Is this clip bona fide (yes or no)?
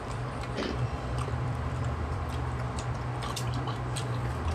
no